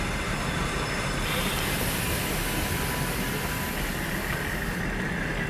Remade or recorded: recorded